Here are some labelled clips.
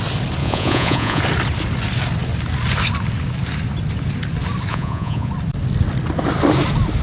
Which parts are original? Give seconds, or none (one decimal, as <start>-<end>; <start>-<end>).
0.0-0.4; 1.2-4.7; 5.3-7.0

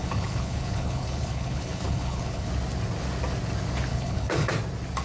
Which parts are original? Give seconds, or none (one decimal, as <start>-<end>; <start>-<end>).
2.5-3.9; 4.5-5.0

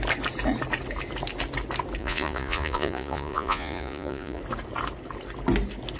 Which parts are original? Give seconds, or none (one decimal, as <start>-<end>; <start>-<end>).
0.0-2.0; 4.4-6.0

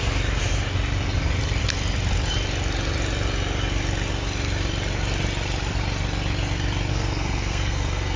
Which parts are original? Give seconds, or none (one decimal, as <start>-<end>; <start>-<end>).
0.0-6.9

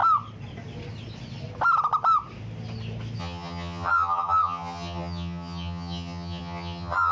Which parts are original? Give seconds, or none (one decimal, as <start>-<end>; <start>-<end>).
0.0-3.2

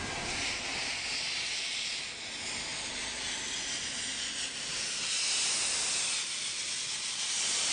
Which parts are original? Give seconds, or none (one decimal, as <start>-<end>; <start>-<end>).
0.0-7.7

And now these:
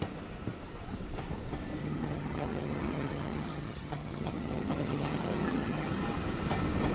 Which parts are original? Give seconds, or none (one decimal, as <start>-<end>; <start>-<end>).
0.0-1.8; 5.9-6.9

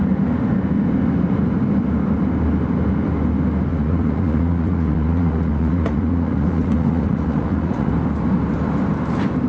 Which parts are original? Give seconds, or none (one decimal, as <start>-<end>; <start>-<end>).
0.0-3.7; 7.9-9.5